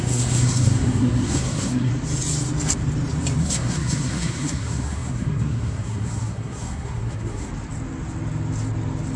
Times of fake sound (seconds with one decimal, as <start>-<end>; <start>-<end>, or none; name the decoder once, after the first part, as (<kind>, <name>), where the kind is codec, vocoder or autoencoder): 0.0-1.9 (codec, SNAC); 3.4-7.5